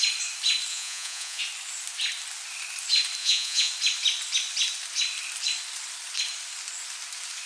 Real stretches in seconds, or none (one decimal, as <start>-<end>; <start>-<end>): 0.0-0.7; 1.4-3.2; 3.7-7.5